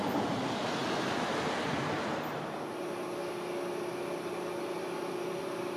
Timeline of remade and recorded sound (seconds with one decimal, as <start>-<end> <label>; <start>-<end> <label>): 0.0-5.8 recorded